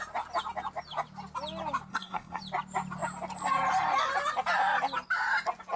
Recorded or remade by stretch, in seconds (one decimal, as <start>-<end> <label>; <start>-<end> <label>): 0.0-1.9 recorded; 1.9-2.4 remade; 2.4-5.8 recorded